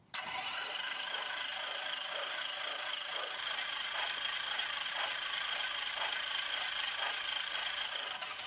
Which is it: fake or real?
fake